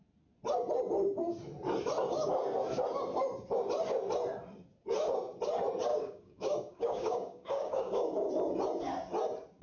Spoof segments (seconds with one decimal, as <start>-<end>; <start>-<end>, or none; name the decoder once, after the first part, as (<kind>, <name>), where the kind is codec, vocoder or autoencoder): 5.9-8.3 (codec, DAC)